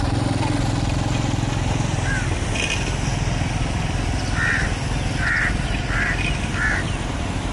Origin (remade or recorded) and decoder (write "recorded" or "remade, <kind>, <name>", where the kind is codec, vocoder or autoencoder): recorded